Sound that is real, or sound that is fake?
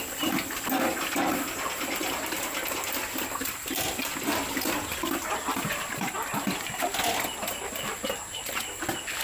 real